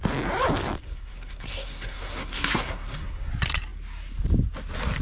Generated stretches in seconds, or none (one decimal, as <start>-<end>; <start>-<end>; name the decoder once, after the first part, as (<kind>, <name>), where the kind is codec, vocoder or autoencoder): 0.8-3.3 (codec, SNAC)